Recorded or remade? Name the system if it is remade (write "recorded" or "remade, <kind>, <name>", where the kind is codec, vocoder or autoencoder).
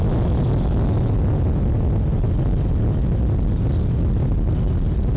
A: recorded